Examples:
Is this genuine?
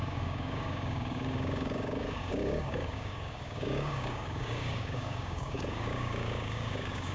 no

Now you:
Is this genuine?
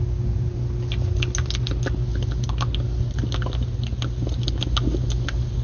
yes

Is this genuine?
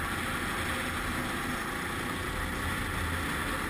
yes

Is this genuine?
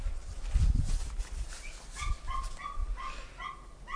yes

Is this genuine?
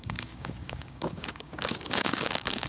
no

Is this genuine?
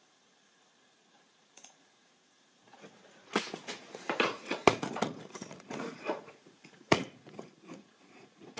no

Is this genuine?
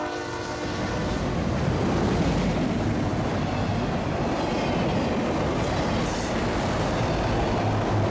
yes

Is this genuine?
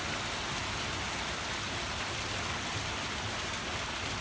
yes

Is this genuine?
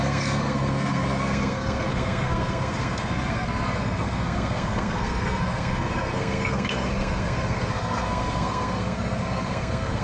no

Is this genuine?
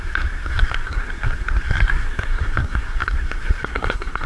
no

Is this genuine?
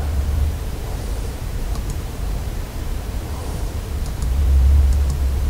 no